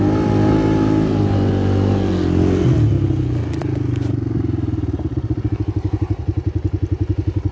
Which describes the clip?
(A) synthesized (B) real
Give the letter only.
B